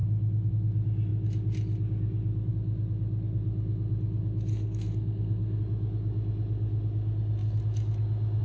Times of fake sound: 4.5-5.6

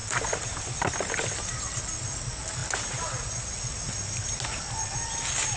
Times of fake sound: none

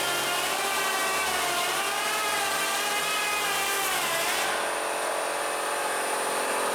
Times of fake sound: none

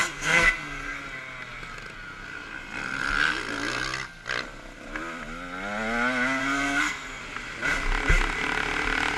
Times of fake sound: 0.0-1.0; 6.4-7.2